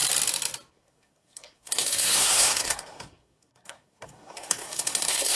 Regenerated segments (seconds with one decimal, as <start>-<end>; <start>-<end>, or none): 0.7-5.3